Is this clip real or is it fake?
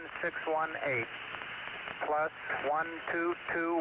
real